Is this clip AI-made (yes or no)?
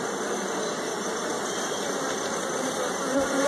no